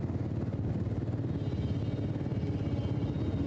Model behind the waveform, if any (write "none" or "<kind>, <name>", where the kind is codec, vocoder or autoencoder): none